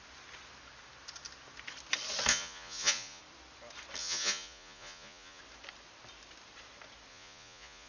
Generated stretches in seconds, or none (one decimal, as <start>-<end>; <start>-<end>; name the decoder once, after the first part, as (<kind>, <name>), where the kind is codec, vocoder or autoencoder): 2.3-3.2 (vocoder, Vocos); 4.0-5.4; 7.1-7.9